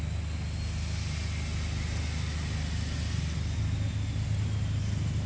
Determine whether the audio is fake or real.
real